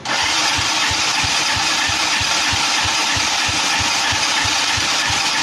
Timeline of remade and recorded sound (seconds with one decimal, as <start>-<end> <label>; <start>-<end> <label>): 0.0-5.4 recorded